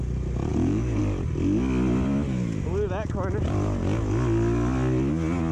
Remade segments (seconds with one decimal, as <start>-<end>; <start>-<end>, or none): 0.5-1.0